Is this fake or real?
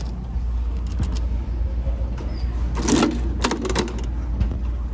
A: real